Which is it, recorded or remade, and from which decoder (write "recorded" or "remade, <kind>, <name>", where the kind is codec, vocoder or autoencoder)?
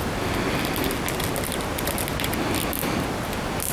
recorded